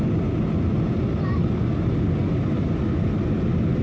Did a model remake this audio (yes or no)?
no